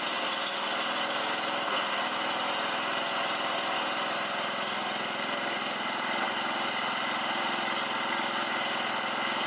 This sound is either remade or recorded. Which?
recorded